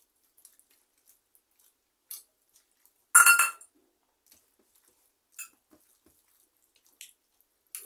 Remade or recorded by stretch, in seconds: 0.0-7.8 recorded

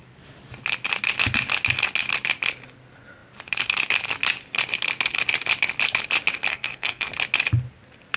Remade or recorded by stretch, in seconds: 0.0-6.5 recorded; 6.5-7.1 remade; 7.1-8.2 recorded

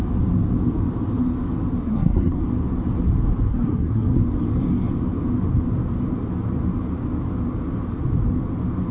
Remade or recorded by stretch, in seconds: 0.0-1.8 recorded; 1.8-2.4 remade; 2.4-3.5 recorded; 3.5-4.2 remade; 4.2-8.9 recorded